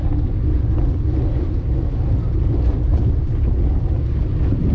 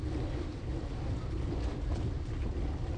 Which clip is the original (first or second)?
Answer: first